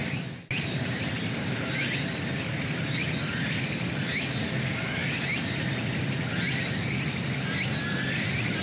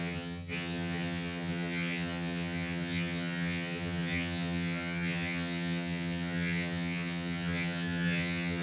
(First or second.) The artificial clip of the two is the second